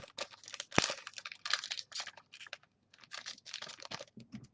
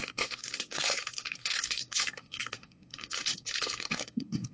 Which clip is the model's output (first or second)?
second